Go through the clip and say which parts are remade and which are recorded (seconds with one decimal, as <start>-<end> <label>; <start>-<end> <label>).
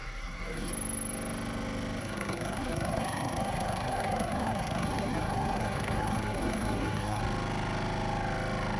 0.0-0.7 remade; 0.7-2.0 recorded; 2.0-7.2 remade; 7.2-8.8 recorded